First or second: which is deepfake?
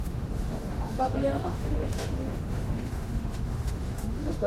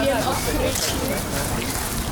first